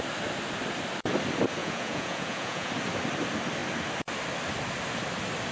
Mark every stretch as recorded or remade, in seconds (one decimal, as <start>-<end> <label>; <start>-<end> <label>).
0.0-1.6 recorded; 1.6-2.7 remade; 2.7-5.5 recorded

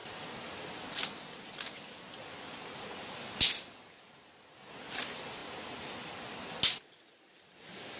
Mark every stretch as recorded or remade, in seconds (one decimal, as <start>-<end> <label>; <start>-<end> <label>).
0.0-8.0 recorded

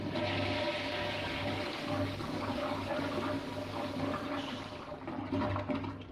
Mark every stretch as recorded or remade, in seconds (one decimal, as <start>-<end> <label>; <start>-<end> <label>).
0.0-1.0 recorded; 1.0-2.9 remade; 2.9-3.6 recorded; 3.6-4.3 remade; 4.3-6.1 recorded